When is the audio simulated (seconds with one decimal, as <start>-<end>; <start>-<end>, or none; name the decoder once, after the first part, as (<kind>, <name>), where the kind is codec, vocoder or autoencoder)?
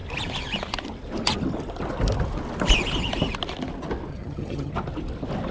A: 4.1-4.7 (vocoder, HiFi-GAN)